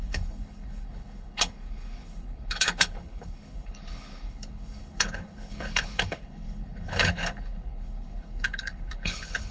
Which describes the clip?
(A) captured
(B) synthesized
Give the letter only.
B